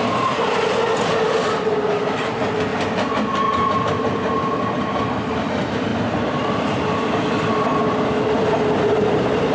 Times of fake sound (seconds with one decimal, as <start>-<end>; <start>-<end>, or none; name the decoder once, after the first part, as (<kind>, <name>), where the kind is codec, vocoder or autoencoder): none